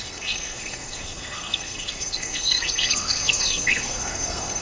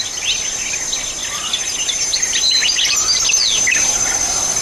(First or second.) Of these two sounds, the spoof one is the first